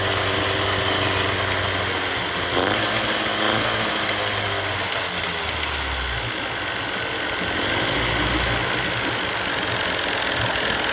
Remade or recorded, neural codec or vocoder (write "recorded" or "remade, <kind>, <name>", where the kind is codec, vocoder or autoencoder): recorded